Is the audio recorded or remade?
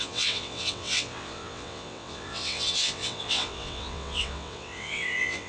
remade